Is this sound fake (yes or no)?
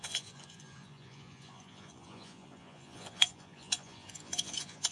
yes